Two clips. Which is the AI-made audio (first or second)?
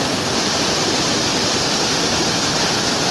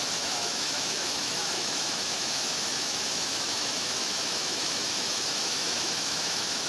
second